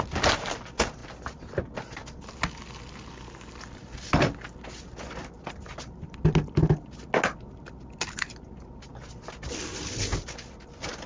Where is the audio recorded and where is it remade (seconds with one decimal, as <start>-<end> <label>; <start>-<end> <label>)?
0.0-11.1 recorded